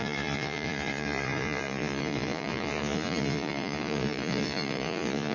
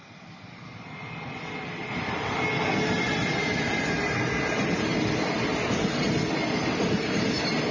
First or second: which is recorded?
second